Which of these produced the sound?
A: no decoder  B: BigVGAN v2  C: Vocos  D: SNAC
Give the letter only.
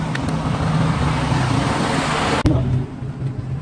A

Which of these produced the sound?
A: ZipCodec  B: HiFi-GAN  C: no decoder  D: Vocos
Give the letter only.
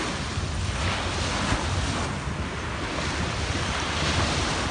C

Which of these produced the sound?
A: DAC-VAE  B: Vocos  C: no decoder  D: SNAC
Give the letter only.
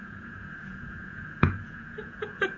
B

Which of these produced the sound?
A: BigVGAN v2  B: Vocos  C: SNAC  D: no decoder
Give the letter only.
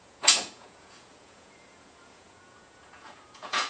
B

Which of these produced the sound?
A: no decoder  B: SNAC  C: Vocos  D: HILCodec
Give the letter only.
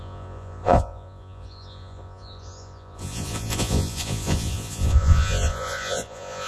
C